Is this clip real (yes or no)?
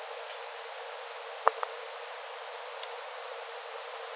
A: yes